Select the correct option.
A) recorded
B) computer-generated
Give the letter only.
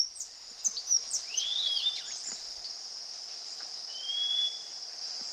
B